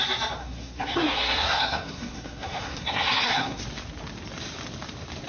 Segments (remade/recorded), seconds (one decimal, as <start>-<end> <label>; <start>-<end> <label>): 0.0-0.4 recorded; 0.4-3.6 remade; 3.6-5.3 recorded